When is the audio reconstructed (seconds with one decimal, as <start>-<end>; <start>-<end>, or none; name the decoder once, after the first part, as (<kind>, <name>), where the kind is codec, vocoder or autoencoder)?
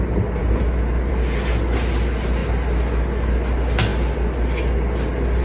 none